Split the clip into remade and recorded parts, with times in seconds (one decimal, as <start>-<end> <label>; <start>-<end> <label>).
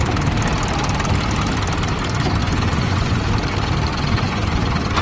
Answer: 0.0-2.4 recorded; 2.4-3.2 remade; 3.2-3.9 recorded; 3.9-5.0 remade